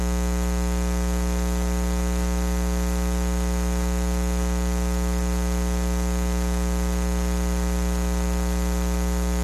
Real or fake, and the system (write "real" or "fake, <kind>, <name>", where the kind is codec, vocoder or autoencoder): real